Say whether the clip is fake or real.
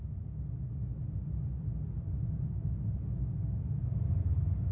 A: real